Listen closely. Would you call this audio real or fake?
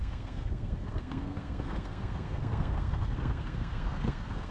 fake